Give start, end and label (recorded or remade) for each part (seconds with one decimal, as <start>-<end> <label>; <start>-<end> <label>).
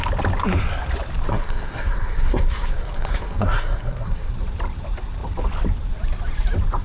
0.0-1.3 recorded; 1.3-4.3 remade; 4.3-6.8 recorded